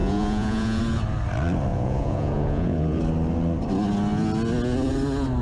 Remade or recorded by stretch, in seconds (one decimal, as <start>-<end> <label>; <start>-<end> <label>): 0.0-0.8 remade; 0.8-1.7 recorded; 1.7-3.0 remade; 3.0-5.4 recorded